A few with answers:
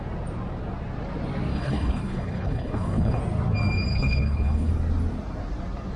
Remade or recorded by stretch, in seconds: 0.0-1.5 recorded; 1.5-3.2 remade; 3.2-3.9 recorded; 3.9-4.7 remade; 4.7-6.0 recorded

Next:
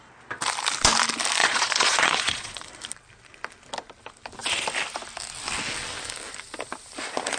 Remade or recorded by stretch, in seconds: 0.0-1.4 recorded; 1.4-2.7 remade; 2.7-7.4 recorded

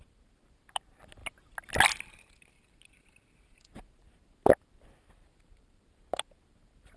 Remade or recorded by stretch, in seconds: 0.0-7.0 recorded